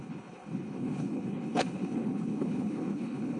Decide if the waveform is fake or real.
fake